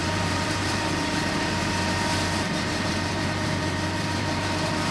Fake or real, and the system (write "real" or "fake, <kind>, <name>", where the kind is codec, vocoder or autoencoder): fake, vocoder, BigVGAN v2